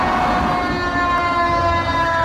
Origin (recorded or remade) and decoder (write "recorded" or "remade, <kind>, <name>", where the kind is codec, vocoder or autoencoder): recorded